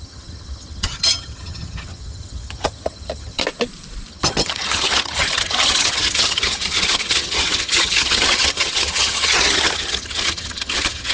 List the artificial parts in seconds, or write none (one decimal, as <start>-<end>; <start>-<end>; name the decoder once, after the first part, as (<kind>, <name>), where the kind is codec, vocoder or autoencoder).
0.0-3.4 (vocoder, HiFi-GAN); 4.1-11.1